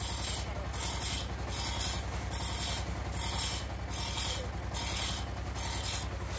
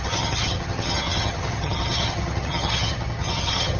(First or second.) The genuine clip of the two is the first